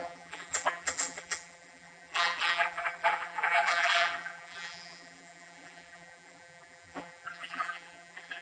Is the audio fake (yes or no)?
yes